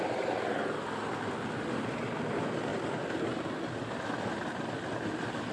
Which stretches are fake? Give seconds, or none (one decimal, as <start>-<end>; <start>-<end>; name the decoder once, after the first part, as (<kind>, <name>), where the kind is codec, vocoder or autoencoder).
none

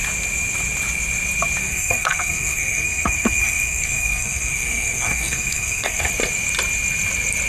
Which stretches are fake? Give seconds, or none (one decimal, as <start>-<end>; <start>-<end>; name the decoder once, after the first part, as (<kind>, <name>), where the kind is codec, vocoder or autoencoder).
1.6-6.1 (codec, SNAC)

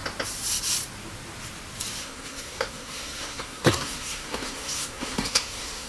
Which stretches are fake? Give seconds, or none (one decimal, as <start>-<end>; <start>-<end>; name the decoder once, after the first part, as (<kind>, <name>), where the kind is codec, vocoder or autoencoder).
2.0-5.9 (codec, SNAC)

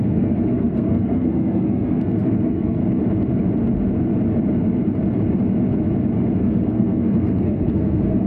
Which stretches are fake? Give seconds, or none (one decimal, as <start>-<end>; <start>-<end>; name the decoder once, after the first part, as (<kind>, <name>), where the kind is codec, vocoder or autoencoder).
0.0-2.8 (codec, SNAC); 6.4-8.3

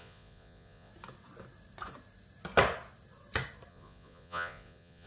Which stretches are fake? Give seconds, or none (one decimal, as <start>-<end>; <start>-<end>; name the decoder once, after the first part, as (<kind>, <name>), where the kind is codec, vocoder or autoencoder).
0.0-0.9 (vocoder, Vocos); 3.7-5.1